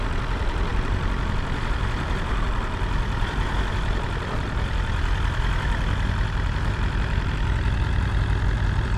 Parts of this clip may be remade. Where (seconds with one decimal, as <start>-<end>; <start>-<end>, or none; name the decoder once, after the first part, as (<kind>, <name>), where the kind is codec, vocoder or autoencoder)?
none